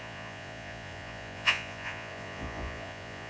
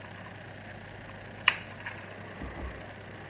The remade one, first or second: first